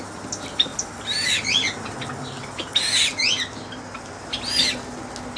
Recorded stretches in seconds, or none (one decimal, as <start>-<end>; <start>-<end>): 0.0-5.4